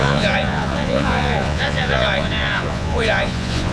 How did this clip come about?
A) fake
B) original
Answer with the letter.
A